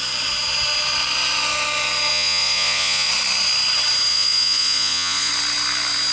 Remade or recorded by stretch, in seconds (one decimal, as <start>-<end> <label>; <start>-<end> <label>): 0.0-2.1 recorded; 2.1-3.1 remade; 3.1-4.1 recorded; 4.1-5.3 remade; 5.3-6.1 recorded